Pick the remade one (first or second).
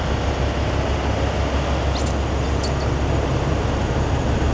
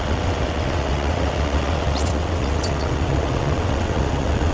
second